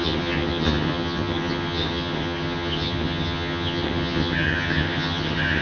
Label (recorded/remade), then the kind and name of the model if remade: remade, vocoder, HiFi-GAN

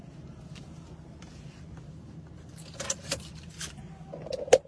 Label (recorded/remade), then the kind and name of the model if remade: recorded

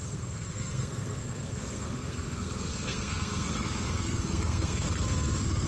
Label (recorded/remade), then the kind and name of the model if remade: remade, codec, SNAC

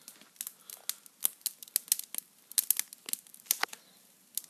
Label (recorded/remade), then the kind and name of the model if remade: recorded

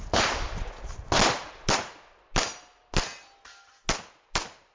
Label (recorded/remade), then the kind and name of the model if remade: recorded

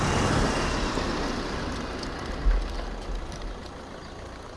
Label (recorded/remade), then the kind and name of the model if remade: recorded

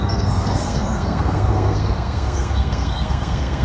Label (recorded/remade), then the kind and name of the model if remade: remade, codec, SNAC